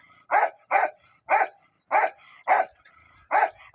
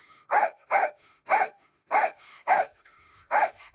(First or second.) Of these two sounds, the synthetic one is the second